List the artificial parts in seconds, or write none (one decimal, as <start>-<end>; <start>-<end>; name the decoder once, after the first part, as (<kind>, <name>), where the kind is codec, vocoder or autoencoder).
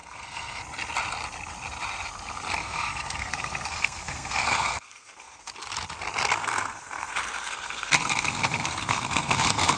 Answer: 0.0-0.6 (codec, SNAC); 2.6-5.5; 6.4-9.8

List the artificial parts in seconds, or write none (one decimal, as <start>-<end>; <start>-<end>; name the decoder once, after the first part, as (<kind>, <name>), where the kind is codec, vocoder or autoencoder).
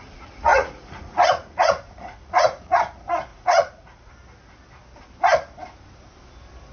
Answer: 0.5-2.7 (vocoder, Vocos); 3.3-4.1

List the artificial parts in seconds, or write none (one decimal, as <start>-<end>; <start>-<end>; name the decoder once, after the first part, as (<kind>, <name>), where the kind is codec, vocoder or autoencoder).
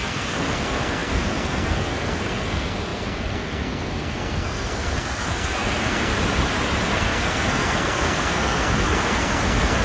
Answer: 0.0-6.1 (codec, SNAC); 6.9-9.8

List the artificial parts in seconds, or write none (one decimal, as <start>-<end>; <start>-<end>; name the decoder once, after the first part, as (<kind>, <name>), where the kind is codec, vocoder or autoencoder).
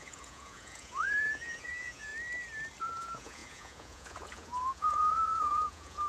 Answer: 0.0-2.1 (vocoder, Vocos); 2.8-6.1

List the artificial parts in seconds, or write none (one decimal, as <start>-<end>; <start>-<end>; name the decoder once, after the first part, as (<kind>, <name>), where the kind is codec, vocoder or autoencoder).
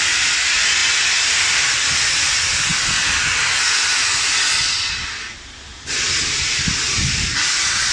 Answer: none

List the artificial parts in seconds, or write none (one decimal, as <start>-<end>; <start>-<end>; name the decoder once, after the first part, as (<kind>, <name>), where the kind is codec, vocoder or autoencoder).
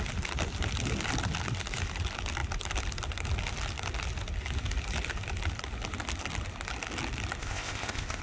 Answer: 7.4-8.2 (codec, ZipCodec)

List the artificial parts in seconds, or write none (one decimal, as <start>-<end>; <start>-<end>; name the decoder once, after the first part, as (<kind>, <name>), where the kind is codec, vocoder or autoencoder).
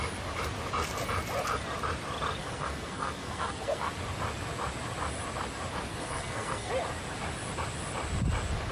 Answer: 2.4-3.9 (codec, SNAC); 5.9-6.7